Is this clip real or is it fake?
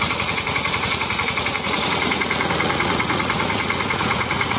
fake